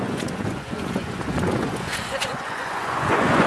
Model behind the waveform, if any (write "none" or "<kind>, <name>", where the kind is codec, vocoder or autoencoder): vocoder, Vocos